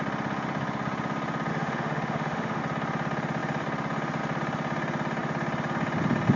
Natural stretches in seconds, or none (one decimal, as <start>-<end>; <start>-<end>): 0.0-1.5; 2.6-6.4